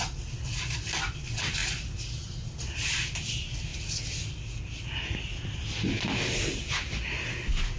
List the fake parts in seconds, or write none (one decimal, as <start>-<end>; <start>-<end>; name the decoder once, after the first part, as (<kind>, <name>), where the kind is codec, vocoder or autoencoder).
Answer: none